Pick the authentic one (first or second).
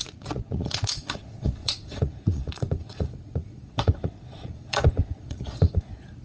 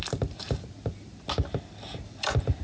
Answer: second